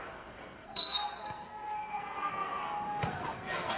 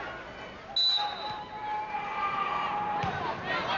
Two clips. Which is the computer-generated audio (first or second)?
first